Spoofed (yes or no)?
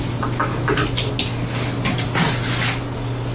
no